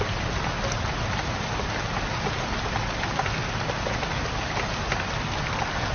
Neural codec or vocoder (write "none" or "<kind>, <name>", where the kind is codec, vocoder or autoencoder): none